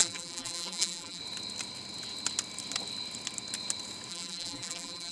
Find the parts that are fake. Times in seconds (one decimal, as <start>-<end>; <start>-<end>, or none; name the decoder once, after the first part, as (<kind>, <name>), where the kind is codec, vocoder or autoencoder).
0.0-1.2 (vocoder, BigVGAN v2); 4.1-5.1